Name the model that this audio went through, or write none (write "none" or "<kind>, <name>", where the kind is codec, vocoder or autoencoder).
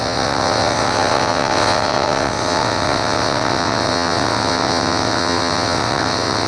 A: vocoder, WaveNeXt